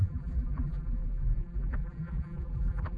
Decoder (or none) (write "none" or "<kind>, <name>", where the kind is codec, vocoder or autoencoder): vocoder, BigVGAN v2